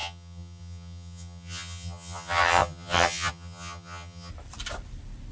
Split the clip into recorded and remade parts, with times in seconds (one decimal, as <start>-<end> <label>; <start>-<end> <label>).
0.0-4.3 remade; 4.3-5.3 recorded